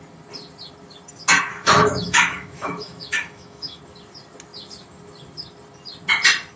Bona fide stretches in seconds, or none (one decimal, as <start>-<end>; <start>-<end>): 0.0-1.5; 3.8-6.6